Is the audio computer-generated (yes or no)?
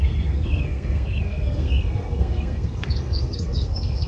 yes